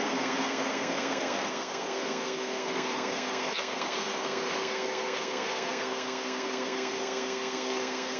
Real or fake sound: fake